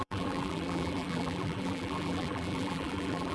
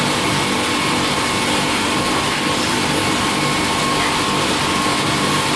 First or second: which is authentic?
second